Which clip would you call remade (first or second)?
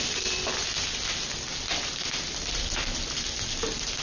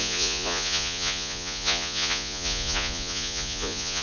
second